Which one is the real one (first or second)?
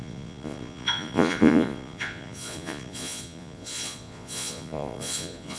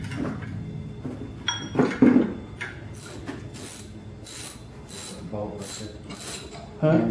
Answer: second